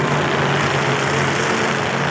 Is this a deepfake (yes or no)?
no